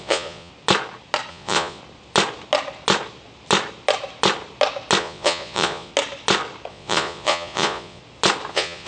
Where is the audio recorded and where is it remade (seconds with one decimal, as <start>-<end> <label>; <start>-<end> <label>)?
0.0-0.5 remade; 0.5-1.3 recorded; 1.3-1.8 remade; 1.8-5.0 recorded; 5.0-5.9 remade; 5.9-6.7 recorded; 6.7-8.0 remade; 8.0-8.5 recorded; 8.5-8.9 remade